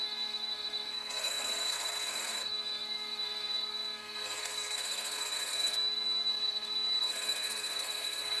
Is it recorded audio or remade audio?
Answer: remade